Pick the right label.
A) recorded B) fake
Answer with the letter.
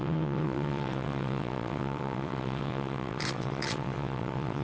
B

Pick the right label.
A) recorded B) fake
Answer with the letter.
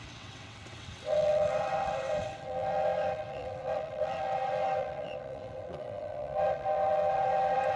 B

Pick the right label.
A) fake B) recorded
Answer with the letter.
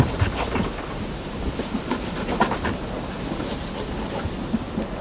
B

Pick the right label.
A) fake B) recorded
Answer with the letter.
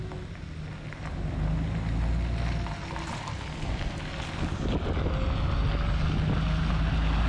B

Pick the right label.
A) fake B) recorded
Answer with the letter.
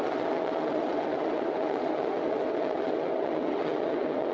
A